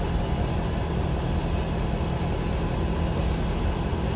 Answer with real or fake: real